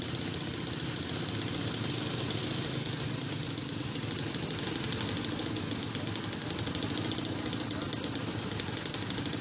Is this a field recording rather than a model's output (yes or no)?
yes